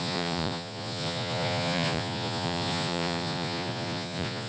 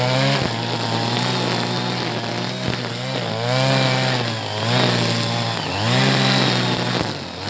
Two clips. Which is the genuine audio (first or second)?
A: second